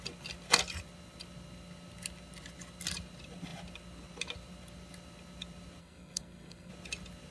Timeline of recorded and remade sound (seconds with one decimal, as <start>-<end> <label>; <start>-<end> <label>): 0.0-5.8 recorded; 5.8-6.7 remade; 6.7-7.3 recorded